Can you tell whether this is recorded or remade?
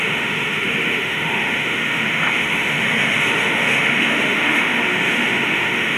remade